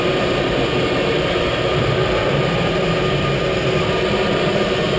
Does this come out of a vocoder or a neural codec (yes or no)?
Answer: no